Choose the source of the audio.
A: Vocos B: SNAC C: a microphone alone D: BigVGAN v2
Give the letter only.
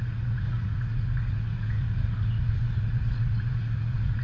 A